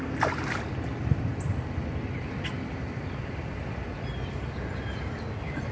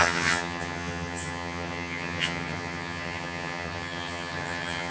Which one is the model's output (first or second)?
second